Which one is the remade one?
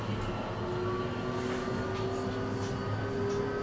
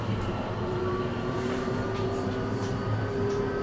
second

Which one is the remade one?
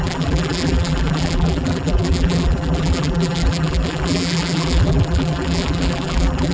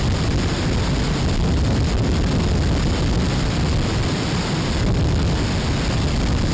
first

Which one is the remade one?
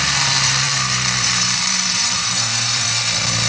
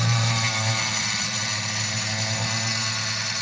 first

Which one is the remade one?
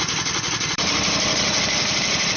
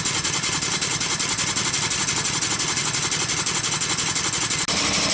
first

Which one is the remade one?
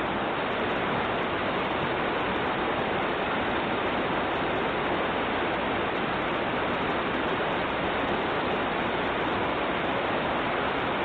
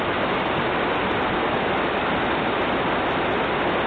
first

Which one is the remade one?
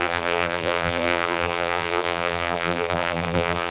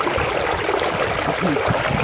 first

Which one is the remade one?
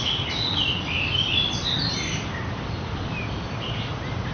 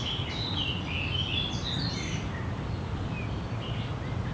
first